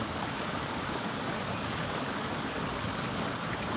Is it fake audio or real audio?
fake